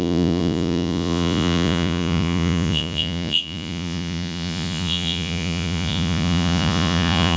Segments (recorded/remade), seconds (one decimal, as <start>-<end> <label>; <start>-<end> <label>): 0.0-7.4 remade